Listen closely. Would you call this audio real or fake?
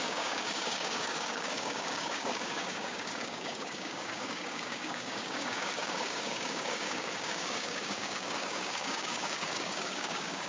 fake